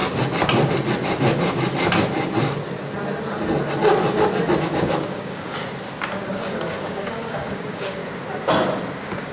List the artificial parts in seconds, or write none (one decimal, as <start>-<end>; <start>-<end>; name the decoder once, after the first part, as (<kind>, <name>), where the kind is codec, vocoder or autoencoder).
4.6-5.6 (codec, DAC); 6.1-8.0; 8.9-9.3